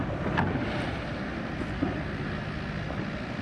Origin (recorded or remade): recorded